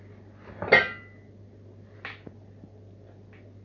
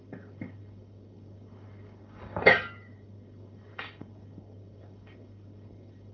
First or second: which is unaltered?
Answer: first